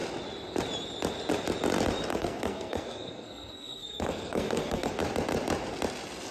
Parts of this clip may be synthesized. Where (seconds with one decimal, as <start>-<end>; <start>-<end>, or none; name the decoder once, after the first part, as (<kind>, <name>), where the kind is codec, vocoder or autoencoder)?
2.1-4.9 (codec, SNAC)

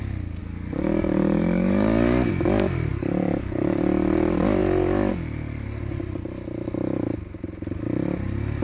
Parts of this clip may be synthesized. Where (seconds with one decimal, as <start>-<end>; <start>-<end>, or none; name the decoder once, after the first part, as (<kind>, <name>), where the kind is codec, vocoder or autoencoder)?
0.4-2.3 (codec, DAC); 2.9-3.8